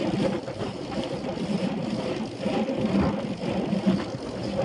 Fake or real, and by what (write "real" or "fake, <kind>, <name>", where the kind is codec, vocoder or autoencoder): real